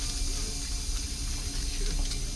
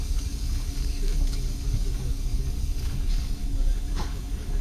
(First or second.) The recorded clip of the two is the first